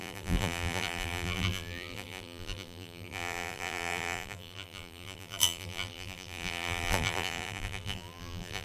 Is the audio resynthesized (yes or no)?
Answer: yes